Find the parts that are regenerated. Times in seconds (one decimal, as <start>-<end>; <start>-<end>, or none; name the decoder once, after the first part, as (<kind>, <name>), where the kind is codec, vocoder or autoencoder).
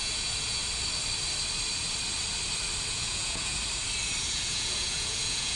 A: 0.0-0.6 (vocoder, Vocos); 2.9-3.6; 4.2-5.5